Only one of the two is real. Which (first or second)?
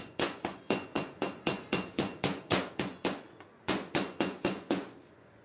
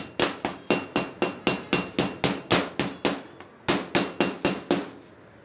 second